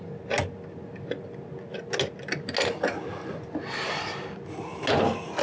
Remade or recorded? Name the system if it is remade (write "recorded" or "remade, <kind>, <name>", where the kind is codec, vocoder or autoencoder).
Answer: recorded